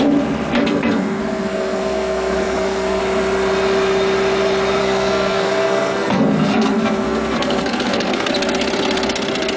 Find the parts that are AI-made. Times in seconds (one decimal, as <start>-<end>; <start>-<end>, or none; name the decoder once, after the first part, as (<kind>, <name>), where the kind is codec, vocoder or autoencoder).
0.6-3.0 (codec, SNAC); 4.8-8.3